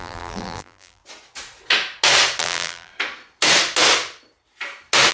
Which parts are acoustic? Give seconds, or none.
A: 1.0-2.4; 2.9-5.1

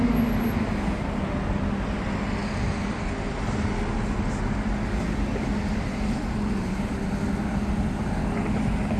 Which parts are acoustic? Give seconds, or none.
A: 0.0-9.0